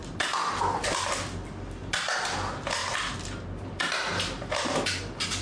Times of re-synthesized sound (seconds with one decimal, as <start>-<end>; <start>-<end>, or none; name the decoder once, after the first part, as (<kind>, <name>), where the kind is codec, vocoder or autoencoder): none